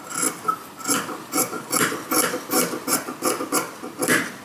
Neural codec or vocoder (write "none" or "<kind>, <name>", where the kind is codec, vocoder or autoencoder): none